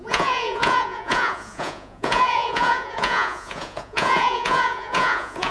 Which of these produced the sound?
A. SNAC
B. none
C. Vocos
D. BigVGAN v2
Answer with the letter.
C